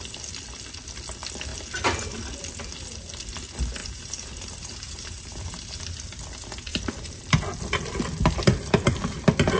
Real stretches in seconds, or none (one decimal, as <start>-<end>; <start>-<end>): 0.0-3.8; 5.8-6.7; 7.2-9.6